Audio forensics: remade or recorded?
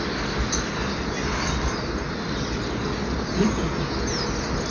recorded